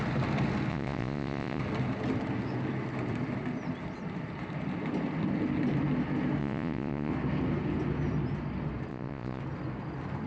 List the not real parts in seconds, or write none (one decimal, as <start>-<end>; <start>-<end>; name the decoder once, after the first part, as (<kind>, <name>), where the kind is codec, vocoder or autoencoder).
0.7-1.6 (vocoder, Vocos); 6.4-7.1; 8.9-9.4